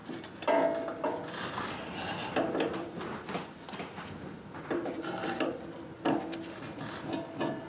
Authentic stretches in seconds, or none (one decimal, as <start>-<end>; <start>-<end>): 0.0-7.7